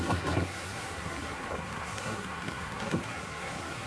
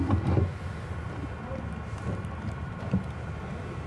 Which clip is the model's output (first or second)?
first